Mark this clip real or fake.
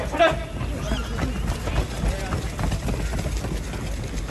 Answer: real